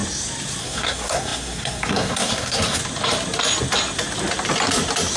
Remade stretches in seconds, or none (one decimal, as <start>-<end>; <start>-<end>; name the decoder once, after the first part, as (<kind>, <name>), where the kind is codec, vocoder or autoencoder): 0.6-2.8 (codec, SNAC)